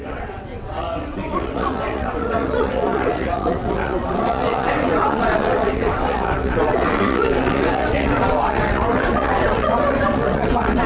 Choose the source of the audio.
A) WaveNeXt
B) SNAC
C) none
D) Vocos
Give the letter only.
A